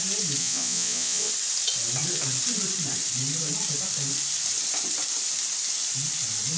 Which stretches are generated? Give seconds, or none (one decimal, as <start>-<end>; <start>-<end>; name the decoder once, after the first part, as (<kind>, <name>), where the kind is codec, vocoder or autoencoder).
0.4-1.3 (vocoder, Vocos)